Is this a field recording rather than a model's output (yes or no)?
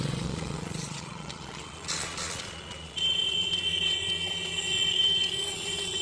no